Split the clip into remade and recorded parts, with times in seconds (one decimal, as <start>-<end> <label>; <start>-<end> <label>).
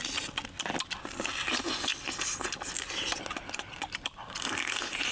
0.0-5.1 recorded